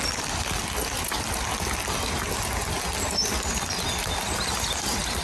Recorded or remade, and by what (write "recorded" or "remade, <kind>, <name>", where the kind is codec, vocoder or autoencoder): recorded